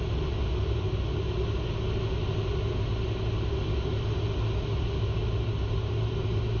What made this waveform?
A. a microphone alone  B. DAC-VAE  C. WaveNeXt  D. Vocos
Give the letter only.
A